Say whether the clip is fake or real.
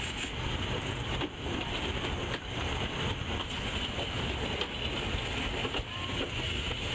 real